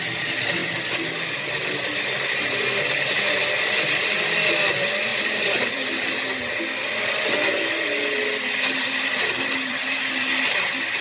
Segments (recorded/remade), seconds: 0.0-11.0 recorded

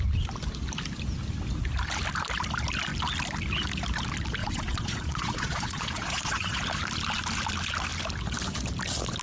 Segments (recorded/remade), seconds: 0.0-4.4 recorded; 4.4-6.6 remade; 6.6-9.2 recorded

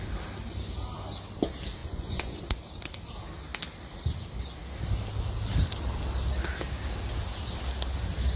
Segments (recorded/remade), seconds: 0.0-1.8 recorded; 1.8-2.4 remade; 2.4-8.4 recorded

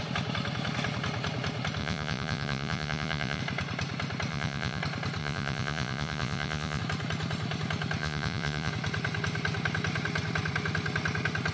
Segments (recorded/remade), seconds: 0.0-1.8 recorded; 1.8-3.4 remade; 3.4-4.3 recorded; 4.3-4.8 remade; 4.8-5.2 recorded; 5.2-6.8 remade; 6.8-8.0 recorded; 8.0-8.7 remade; 8.7-11.5 recorded

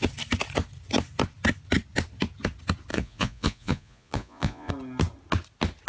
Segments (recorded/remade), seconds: 0.0-2.9 recorded; 2.9-4.7 remade; 4.7-5.9 recorded

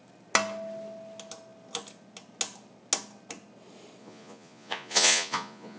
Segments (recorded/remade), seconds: 0.0-4.0 recorded; 4.0-5.8 remade

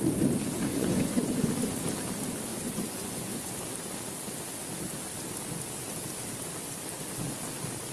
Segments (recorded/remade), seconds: 0.0-0.7 recorded; 0.7-1.5 remade; 1.5-2.5 recorded; 2.5-3.5 remade; 3.5-7.9 recorded